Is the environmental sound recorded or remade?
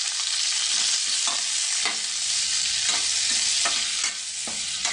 recorded